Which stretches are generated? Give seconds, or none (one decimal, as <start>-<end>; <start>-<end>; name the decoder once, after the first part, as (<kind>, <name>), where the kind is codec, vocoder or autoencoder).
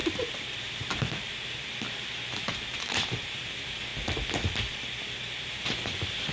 0.6-3.9 (vocoder, BigVGAN v2); 5.4-6.3